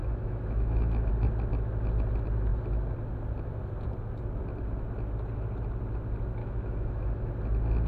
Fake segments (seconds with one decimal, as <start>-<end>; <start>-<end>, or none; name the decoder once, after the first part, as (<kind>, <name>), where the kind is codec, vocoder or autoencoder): 0.0-1.1 (autoencoder, DAC-VAE); 6.4-7.3